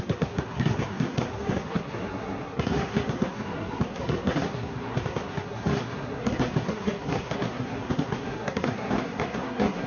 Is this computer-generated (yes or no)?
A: yes